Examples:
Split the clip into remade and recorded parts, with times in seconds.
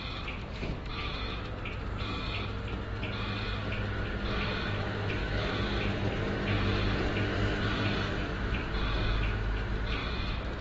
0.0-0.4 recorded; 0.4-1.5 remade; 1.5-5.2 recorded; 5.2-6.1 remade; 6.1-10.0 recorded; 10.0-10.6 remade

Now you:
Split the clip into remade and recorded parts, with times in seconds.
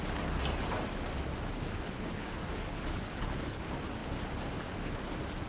0.0-1.7 recorded; 1.7-2.3 remade; 2.3-2.7 recorded; 2.7-3.6 remade; 3.6-5.5 recorded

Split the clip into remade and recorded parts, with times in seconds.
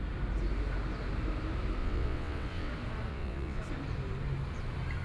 0.0-1.8 recorded; 1.8-2.7 remade; 2.7-3.1 recorded; 3.1-3.6 remade; 3.6-5.0 recorded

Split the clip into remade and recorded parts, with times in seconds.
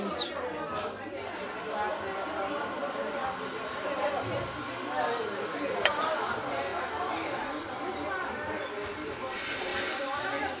0.0-2.8 recorded; 2.8-4.3 remade; 4.3-6.7 recorded; 6.7-8.3 remade; 8.3-9.7 recorded; 9.7-10.6 remade